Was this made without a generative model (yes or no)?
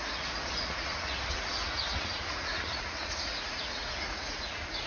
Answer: no